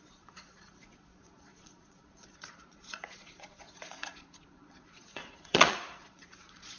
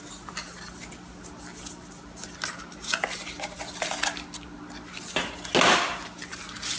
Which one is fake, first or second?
first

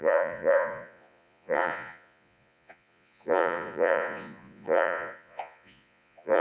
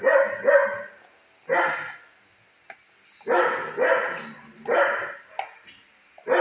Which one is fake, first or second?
first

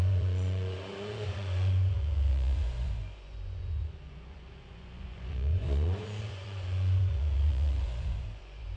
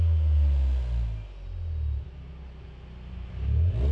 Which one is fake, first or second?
first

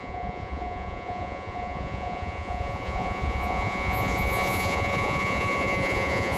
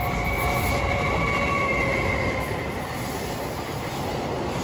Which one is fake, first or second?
first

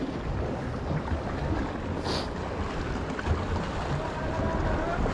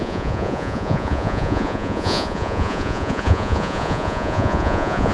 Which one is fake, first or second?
second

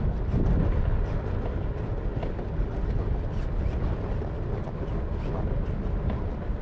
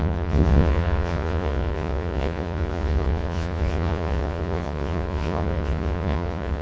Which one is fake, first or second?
second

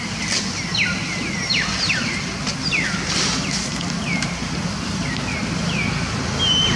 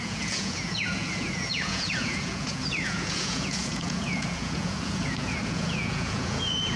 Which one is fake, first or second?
second